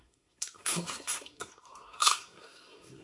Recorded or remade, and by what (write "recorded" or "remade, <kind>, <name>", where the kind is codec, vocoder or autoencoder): remade, codec, SNAC